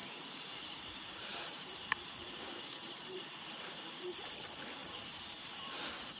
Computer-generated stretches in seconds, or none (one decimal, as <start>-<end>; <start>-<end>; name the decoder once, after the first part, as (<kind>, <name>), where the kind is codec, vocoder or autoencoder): 0.0-2.1 (vocoder, BigVGAN v2); 2.7-4.3; 4.8-5.6

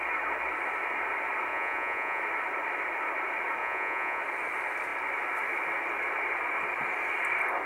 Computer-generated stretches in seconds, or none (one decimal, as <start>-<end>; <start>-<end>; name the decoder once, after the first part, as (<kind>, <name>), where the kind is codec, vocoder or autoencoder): 1.5-2.2 (vocoder, Vocos); 3.6-4.2

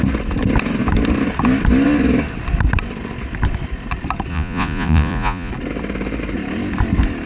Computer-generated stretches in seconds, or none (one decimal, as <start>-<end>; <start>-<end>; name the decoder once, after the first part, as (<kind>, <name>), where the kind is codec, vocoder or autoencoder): 4.3-5.5 (vocoder, Vocos)

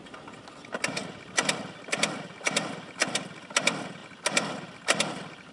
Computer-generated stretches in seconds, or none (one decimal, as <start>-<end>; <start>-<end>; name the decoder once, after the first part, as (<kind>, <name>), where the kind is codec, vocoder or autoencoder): none

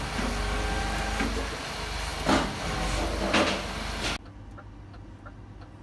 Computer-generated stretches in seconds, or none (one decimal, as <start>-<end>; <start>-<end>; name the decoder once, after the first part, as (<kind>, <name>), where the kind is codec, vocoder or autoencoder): none

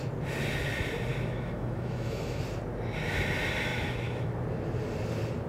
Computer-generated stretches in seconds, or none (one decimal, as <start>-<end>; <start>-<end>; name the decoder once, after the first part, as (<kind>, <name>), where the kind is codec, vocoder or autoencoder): 1.1-2.4 (autoencoder, DAC-VAE); 3.7-4.3